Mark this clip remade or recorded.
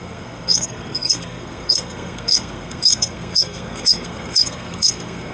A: remade